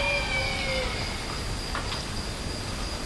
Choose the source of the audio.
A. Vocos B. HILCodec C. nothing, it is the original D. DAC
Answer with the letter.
C